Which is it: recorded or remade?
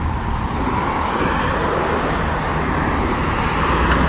recorded